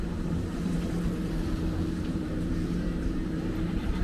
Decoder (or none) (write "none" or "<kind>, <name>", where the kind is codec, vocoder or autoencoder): vocoder, BigVGAN v2